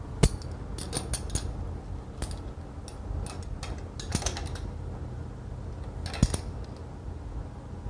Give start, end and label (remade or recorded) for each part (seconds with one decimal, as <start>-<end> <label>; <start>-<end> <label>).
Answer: 0.0-7.9 recorded